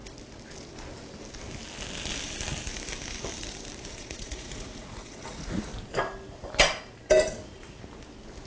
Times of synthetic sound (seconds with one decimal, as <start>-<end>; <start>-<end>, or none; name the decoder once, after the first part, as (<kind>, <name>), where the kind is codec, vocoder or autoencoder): 3.9-5.7 (vocoder, Vocos)